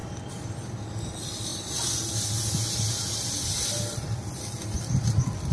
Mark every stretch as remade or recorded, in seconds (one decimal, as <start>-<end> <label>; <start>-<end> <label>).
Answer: 0.0-5.5 recorded